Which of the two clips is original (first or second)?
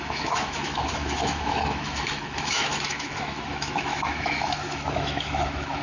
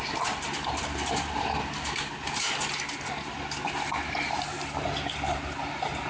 second